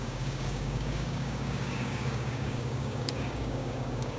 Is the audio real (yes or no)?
no